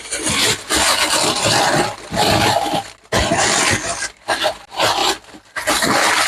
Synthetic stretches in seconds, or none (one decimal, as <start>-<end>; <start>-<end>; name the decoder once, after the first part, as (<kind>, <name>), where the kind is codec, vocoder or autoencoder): none

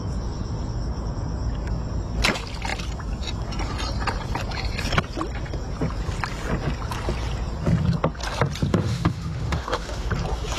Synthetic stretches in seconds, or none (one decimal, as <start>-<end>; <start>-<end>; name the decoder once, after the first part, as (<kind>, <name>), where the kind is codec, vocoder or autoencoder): 8.7-10.1 (autoencoder, DAC-VAE)

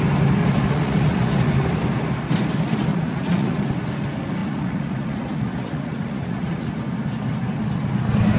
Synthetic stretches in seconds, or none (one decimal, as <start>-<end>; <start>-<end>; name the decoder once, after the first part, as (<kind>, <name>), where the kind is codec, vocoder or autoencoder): 0.4-1.5 (vocoder, Vocos); 2.9-3.6; 4.4-6.7

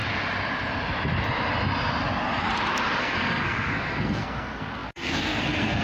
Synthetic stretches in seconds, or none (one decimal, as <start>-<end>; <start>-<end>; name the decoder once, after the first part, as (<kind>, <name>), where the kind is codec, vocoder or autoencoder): 3.0-5.8 (codec, SNAC)

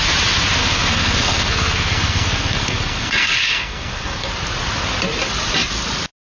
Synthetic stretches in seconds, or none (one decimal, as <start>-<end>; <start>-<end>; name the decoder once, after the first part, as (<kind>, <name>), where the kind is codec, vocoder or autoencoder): 0.6-4.3 (codec, SNAC)

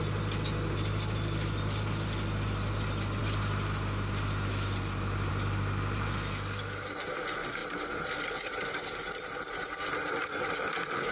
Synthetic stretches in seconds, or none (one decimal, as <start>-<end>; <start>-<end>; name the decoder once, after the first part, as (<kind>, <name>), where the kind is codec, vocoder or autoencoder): none

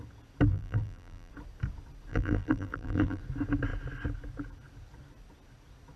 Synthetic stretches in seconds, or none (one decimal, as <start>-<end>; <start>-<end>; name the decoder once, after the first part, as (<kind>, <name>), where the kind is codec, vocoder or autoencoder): 0.5-1.3 (vocoder, BigVGAN v2); 2.1-3.2

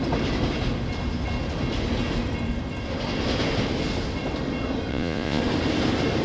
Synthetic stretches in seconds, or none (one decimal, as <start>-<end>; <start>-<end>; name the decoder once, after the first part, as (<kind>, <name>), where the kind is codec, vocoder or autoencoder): 4.9-5.4 (vocoder, Vocos)